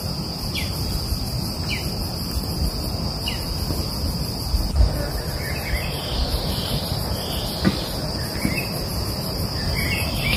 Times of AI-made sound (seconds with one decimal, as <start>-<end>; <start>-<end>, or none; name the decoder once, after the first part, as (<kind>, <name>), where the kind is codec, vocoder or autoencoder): 6.2-7.0 (vocoder, BigVGAN v2); 8.9-10.4